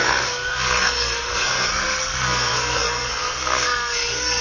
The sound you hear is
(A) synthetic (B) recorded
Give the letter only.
A